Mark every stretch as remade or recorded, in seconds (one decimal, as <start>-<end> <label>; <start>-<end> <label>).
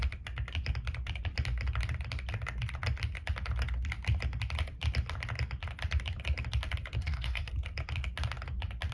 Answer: 0.0-7.0 recorded; 7.0-7.5 remade; 7.5-8.9 recorded